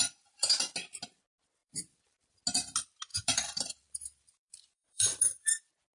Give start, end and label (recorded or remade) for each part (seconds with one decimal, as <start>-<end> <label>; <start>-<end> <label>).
0.0-0.5 remade; 0.5-1.6 recorded; 1.6-2.4 remade; 2.4-3.1 recorded; 3.1-5.9 remade